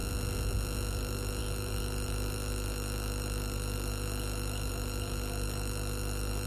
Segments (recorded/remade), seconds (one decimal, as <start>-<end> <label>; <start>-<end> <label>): 0.0-0.9 recorded; 0.9-6.5 remade